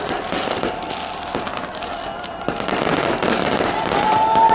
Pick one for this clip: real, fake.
real